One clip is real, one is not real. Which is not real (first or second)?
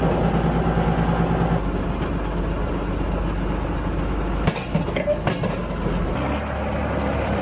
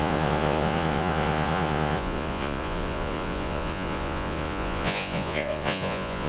second